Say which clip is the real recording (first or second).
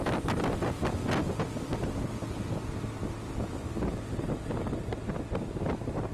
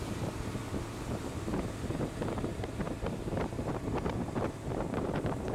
first